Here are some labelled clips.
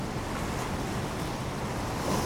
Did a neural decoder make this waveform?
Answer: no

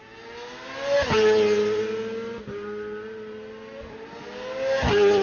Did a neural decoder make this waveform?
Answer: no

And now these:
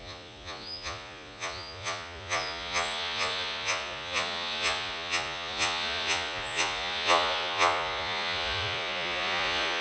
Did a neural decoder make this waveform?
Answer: yes